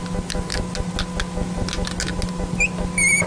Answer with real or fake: real